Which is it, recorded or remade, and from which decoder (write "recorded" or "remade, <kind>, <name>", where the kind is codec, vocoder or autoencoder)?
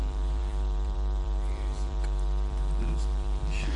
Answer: remade, vocoder, BigVGAN v2